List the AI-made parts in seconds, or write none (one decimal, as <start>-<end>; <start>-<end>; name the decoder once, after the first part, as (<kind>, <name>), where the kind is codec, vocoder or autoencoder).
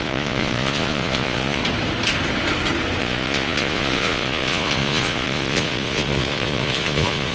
0.0-1.6 (vocoder, Vocos); 3.0-7.3